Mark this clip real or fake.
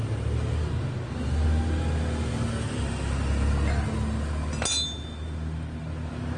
real